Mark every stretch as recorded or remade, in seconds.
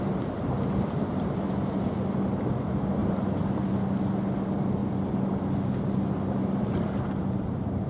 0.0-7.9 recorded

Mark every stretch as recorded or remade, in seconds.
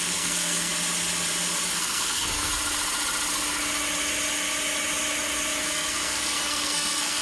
0.0-0.7 remade; 0.7-1.8 recorded; 1.8-2.5 remade; 2.5-5.6 recorded; 5.6-7.2 remade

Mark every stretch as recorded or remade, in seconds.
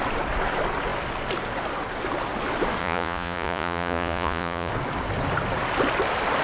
0.0-2.8 recorded; 2.8-4.7 remade; 4.7-6.4 recorded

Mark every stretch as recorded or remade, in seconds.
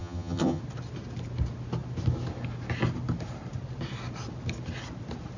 0.0-0.6 remade; 0.6-5.4 recorded